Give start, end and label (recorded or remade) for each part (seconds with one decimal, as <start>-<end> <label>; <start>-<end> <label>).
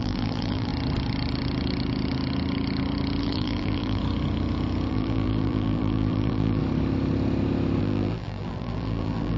0.0-0.7 remade; 0.7-3.2 recorded; 3.2-4.0 remade; 4.0-4.9 recorded; 4.9-6.6 remade; 6.6-7.8 recorded; 7.8-9.4 remade